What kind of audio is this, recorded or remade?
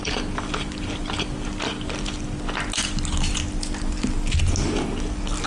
recorded